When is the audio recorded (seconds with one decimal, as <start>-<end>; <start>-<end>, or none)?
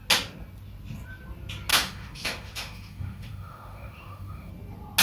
0.0-1.7; 4.5-5.0